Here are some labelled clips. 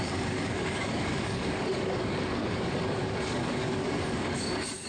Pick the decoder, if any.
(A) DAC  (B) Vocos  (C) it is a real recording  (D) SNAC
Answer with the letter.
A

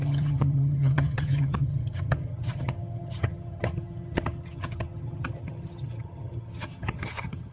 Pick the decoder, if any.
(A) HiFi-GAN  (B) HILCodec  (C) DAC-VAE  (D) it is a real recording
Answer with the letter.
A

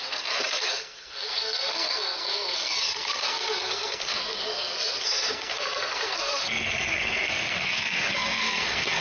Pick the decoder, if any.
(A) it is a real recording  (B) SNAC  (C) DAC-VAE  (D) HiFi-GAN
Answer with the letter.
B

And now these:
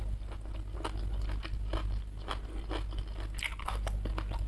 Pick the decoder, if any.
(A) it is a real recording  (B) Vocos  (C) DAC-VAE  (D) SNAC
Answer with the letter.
A